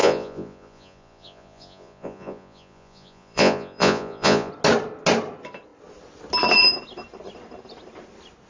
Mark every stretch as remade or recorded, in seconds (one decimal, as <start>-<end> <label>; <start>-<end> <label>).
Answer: 0.0-4.5 remade; 4.5-8.5 recorded